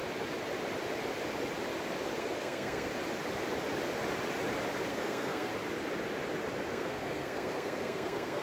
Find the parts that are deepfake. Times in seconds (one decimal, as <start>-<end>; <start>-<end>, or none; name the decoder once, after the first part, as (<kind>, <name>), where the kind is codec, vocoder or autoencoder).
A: 2.2-2.9 (codec, SNAC); 4.9-5.5; 6.7-8.4